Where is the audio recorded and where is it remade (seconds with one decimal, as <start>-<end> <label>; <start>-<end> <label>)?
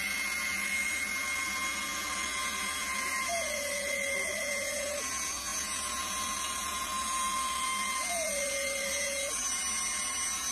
0.0-10.5 recorded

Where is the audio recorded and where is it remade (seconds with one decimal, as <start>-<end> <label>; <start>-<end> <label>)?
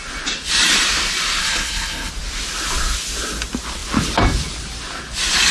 0.0-1.4 recorded; 1.4-2.1 remade; 2.1-5.5 recorded